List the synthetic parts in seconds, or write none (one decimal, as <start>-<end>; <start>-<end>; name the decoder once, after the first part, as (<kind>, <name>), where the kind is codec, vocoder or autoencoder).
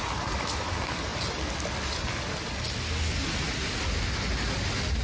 none